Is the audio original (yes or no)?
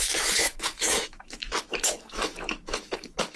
no